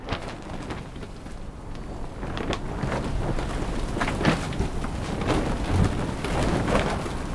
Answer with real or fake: real